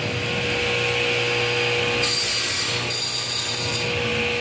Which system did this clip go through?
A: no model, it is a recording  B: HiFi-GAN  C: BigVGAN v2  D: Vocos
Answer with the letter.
A